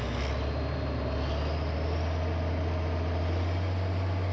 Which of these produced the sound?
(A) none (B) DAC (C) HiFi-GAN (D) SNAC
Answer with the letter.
A